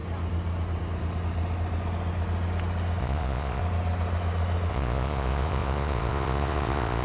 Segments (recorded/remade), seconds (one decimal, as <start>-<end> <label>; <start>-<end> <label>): 0.0-3.0 recorded; 3.0-3.6 remade; 3.6-4.7 recorded; 4.7-7.0 remade